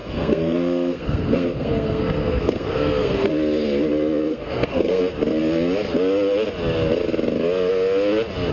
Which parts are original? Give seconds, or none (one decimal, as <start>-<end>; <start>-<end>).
3.3-4.3; 5.0-8.5